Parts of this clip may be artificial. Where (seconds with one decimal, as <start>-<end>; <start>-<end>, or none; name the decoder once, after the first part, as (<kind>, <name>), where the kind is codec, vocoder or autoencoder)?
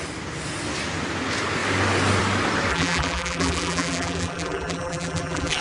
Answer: 2.7-5.6 (vocoder, BigVGAN v2)